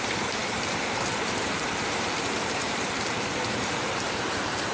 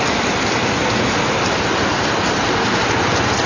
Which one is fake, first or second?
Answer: first